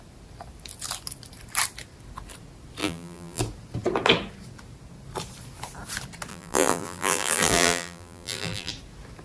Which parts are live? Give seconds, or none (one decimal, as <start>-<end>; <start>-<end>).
0.0-2.8; 3.4-6.3; 8.7-9.2